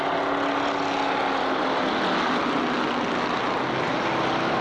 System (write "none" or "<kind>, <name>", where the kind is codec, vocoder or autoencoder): none